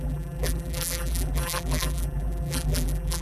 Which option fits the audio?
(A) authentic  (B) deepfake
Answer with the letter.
B